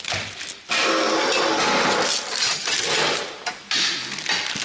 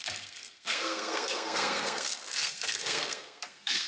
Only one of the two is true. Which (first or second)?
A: first